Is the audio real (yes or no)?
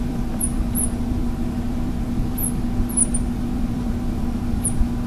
no